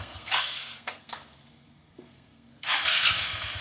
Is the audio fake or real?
fake